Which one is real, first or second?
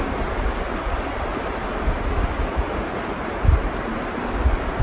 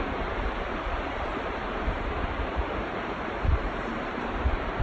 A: first